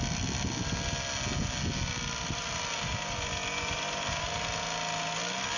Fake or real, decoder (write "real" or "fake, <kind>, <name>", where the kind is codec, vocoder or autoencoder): real